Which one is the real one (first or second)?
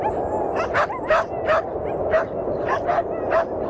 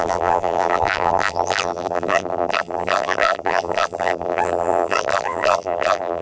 first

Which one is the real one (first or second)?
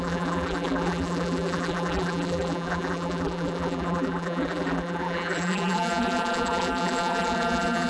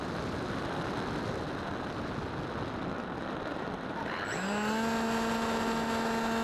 second